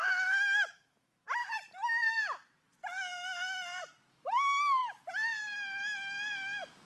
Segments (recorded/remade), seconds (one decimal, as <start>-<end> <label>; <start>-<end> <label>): 0.0-1.4 remade; 1.4-4.1 recorded; 4.1-4.8 remade; 4.8-6.9 recorded